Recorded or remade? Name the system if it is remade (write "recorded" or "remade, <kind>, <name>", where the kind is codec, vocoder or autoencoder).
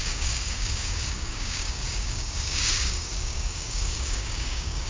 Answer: remade, codec, DAC